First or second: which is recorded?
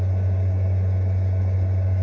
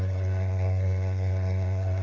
first